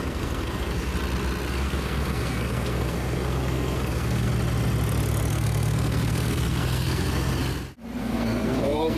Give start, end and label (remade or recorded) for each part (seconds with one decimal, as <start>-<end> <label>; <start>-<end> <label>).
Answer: 0.0-0.9 remade; 0.9-1.5 recorded; 1.5-4.3 remade; 4.3-5.3 recorded; 5.3-7.4 remade; 7.4-8.0 recorded; 8.0-9.0 remade